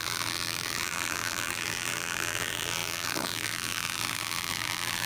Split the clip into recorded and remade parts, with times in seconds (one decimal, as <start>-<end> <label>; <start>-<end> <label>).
0.0-5.1 remade